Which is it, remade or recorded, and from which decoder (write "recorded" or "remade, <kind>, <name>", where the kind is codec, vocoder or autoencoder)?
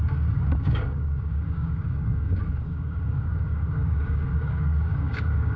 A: remade, codec, DAC